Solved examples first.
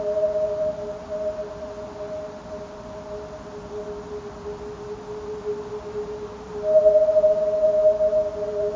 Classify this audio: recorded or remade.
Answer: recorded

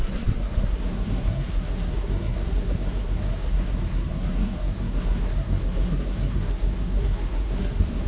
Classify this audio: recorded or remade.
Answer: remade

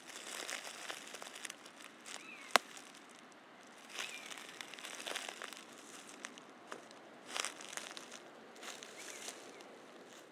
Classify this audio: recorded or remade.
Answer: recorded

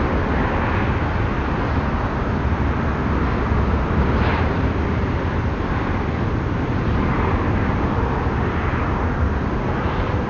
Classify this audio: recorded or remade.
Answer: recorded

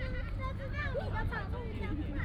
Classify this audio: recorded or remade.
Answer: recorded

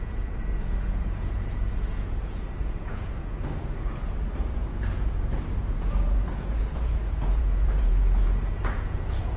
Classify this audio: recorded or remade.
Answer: remade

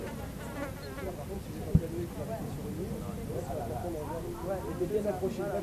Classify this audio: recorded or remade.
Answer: recorded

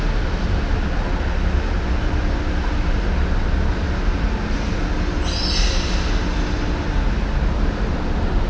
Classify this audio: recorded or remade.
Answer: recorded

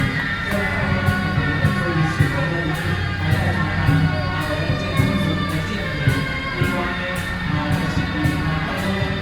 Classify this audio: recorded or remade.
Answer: recorded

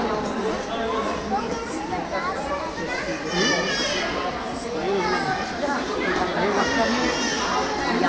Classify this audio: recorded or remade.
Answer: recorded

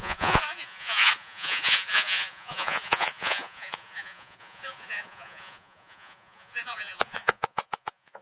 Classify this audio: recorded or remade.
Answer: remade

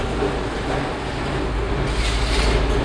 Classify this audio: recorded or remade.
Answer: recorded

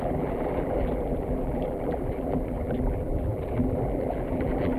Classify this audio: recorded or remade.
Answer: remade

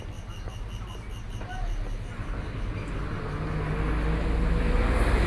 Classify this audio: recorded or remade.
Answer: recorded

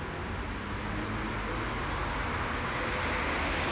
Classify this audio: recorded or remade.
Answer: recorded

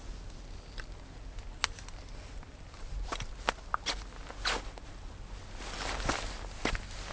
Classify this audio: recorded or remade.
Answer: recorded